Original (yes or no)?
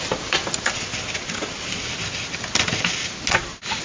yes